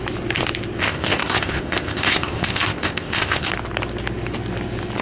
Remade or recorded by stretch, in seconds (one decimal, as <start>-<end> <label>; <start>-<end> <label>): 0.0-0.8 recorded; 0.8-3.5 remade; 3.5-5.0 recorded